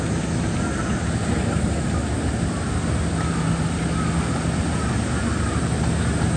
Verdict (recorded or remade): recorded